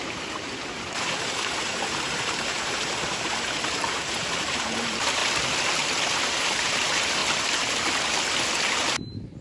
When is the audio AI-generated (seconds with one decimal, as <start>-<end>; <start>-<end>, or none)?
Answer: 0.0-5.2; 6.2-7.2; 8.7-9.4